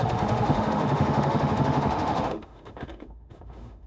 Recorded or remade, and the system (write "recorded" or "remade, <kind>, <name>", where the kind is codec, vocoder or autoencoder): remade, autoencoder, DAC-VAE